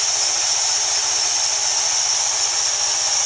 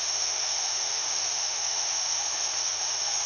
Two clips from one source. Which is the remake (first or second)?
second